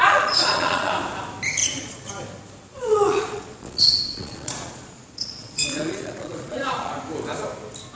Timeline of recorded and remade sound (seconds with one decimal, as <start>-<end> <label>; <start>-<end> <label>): 0.0-0.9 remade; 0.9-1.6 recorded; 1.6-2.1 remade; 2.1-2.7 recorded; 2.7-6.9 remade; 6.9-7.9 recorded